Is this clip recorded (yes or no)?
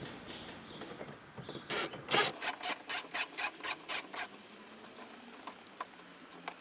yes